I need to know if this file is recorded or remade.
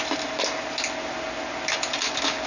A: recorded